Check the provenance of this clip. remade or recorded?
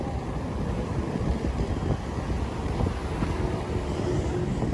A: recorded